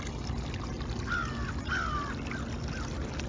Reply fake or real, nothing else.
real